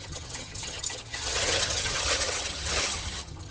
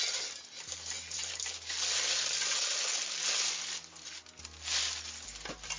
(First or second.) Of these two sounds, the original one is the second